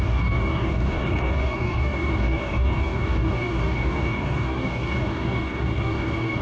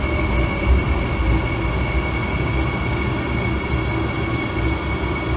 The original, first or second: second